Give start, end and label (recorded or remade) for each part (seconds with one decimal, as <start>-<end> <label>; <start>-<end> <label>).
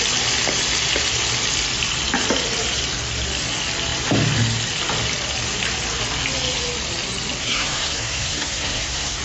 0.0-7.4 recorded; 7.4-9.2 remade